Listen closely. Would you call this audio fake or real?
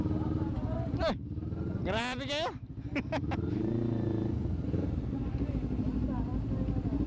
real